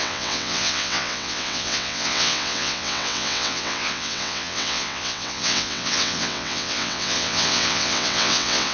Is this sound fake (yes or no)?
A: yes